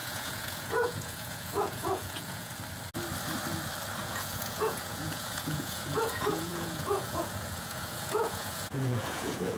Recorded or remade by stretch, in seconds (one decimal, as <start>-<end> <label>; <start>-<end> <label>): 0.0-2.5 remade; 2.5-4.0 recorded; 4.0-9.6 remade